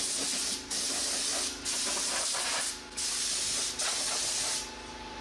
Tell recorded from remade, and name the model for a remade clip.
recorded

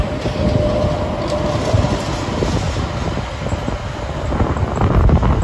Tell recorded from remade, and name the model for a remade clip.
recorded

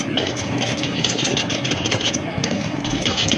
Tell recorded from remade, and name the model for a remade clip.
remade, codec, SNAC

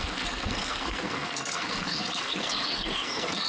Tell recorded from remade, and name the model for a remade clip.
remade, codec, SNAC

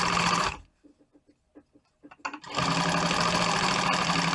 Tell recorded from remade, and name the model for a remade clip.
recorded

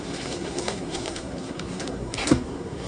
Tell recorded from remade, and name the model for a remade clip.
remade, codec, SNAC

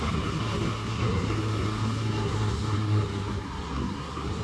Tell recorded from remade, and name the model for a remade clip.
remade, codec, SNAC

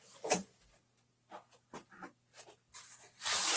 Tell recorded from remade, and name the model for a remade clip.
recorded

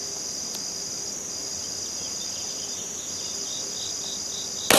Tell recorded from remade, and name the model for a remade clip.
recorded